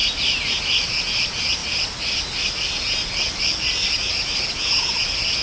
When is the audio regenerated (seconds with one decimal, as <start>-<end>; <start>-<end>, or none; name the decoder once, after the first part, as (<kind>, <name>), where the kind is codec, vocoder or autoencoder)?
none